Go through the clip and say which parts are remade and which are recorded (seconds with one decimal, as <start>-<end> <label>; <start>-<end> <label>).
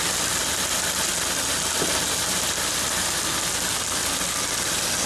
0.0-5.1 recorded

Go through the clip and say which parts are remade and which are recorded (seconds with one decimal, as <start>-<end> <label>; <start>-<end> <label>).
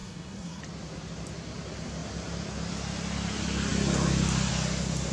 0.0-0.6 remade; 0.6-5.1 recorded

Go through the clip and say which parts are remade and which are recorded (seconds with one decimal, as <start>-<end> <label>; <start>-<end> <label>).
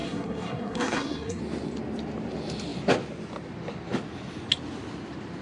0.0-1.4 remade; 1.4-5.4 recorded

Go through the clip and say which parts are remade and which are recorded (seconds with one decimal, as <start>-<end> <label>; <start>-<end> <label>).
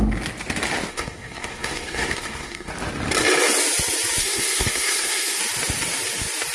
0.0-0.9 recorded; 0.9-2.7 remade; 2.7-4.2 recorded; 4.2-5.4 remade; 5.4-6.5 recorded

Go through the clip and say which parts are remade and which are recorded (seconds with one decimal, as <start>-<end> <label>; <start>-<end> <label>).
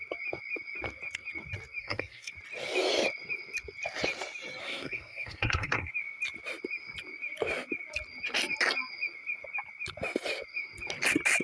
0.0-1.8 recorded; 1.8-2.3 remade; 2.3-4.6 recorded; 4.6-5.9 remade; 5.9-11.4 recorded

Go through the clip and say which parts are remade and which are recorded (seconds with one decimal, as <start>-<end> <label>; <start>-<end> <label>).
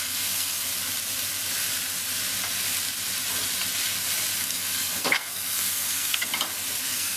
0.0-0.7 remade; 0.7-4.4 recorded; 4.4-6.3 remade; 6.3-6.8 recorded; 6.8-7.2 remade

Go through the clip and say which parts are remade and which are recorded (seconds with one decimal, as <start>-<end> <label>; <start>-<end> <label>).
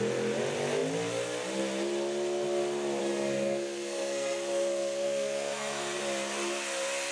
0.0-3.0 recorded; 3.0-6.0 remade; 6.0-7.1 recorded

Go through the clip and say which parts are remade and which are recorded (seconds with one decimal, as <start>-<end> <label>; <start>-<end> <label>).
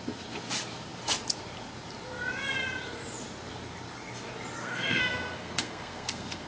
0.0-4.6 recorded; 4.6-6.5 remade